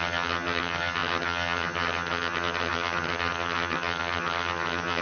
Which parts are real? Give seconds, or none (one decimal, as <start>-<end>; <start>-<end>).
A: none